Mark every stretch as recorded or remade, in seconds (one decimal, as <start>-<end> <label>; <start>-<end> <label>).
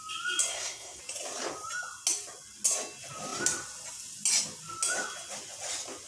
0.0-0.5 recorded; 0.5-1.0 remade; 1.0-6.1 recorded